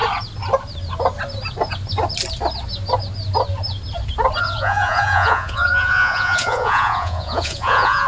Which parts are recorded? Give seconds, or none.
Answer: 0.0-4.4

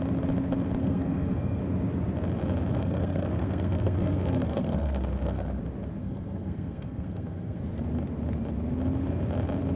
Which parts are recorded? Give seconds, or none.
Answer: 0.0-0.8; 1.6-2.7; 5.6-6.0; 7.6-9.8

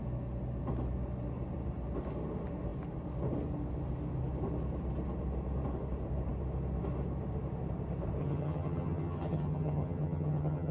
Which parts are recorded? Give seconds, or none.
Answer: 0.0-8.2

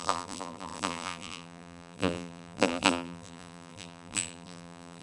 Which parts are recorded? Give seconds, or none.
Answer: none

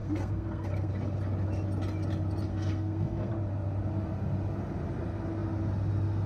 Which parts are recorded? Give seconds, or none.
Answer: 0.9-2.5; 3.3-6.3